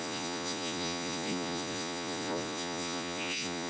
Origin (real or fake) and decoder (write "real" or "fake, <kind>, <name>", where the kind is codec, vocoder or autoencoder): fake, vocoder, Vocos